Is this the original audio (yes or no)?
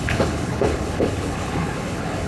no